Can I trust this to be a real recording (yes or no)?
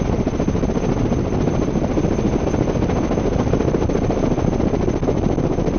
yes